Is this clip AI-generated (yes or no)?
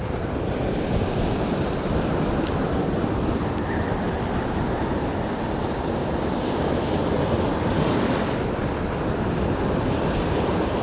yes